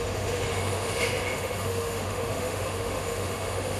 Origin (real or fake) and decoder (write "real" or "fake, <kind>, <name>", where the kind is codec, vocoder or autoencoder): fake, autoencoder, DAC-VAE